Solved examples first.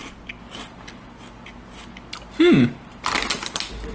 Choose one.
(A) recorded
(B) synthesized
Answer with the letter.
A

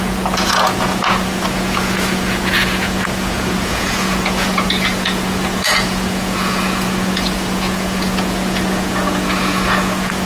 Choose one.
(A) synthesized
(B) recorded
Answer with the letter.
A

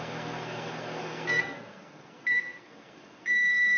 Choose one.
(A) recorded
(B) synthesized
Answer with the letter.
B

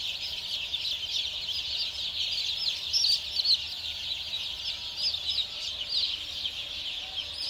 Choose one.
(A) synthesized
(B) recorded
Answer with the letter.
B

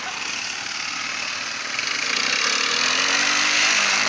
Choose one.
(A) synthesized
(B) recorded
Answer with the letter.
B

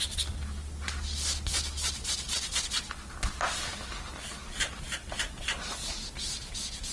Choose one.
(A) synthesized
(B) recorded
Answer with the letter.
B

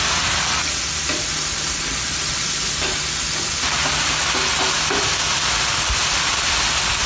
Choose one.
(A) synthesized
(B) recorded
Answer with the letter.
B